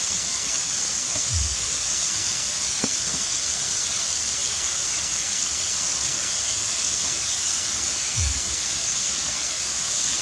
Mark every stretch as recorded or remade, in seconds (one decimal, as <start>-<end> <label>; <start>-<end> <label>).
0.0-10.2 remade